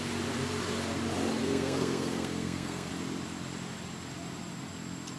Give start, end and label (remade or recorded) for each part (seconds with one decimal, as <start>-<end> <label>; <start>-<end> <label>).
0.0-1.4 recorded; 1.4-2.9 remade; 2.9-5.2 recorded